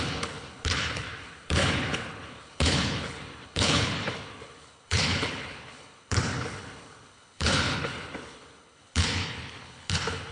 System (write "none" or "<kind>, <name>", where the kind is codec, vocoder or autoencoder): codec, HILCodec